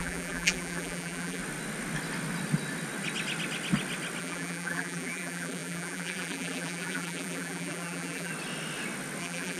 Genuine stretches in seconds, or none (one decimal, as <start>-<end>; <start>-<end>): 1.4-4.2; 8.3-9.2